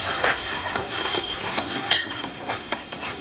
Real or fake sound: fake